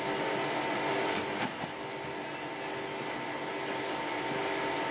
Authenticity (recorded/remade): recorded